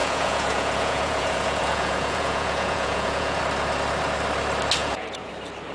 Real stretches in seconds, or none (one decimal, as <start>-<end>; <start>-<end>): 3.4-4.8; 5.3-5.7

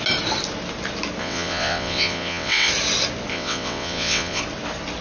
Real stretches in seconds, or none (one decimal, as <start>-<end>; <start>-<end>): 0.0-1.2; 2.7-3.3; 4.4-5.0

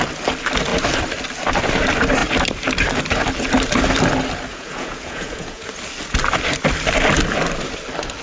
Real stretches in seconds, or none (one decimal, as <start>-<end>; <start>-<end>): 0.0-4.5; 5.7-8.2